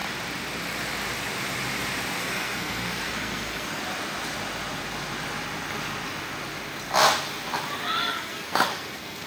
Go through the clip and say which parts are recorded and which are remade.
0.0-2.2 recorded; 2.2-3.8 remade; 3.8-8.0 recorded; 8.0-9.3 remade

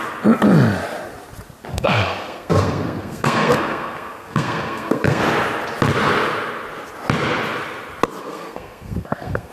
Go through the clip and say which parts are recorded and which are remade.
0.0-1.7 recorded; 1.7-5.2 remade; 5.2-8.2 recorded; 8.2-9.5 remade

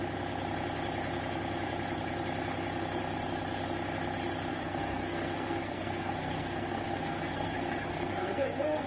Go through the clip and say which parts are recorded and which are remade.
0.0-4.5 recorded; 4.5-8.9 remade

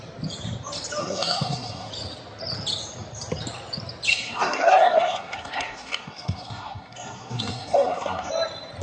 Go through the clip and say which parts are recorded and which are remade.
0.0-1.0 recorded; 1.0-1.9 remade; 1.9-4.1 recorded; 4.1-8.3 remade; 8.3-8.8 recorded

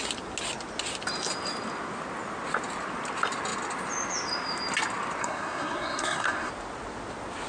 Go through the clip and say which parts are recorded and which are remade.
0.0-5.2 recorded; 5.2-6.5 remade; 6.5-7.5 recorded

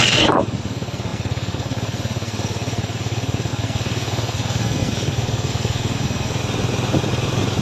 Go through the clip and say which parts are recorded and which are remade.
0.0-6.4 remade; 6.4-7.6 recorded

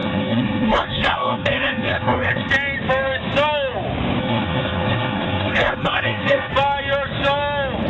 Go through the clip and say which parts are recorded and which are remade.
0.0-2.5 remade; 2.5-4.2 recorded; 4.2-6.5 remade; 6.5-7.9 recorded

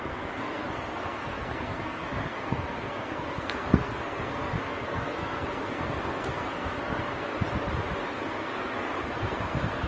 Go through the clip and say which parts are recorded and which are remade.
0.0-7.3 remade; 7.3-8.1 recorded; 8.1-9.9 remade